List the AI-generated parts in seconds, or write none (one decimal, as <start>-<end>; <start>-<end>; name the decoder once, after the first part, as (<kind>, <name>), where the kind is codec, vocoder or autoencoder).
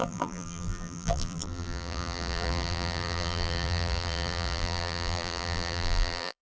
0.0-6.4 (vocoder, BigVGAN v2)